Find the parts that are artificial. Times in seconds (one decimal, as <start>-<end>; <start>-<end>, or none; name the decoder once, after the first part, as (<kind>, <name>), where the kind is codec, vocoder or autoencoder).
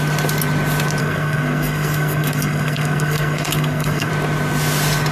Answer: 1.0-4.1 (codec, SNAC)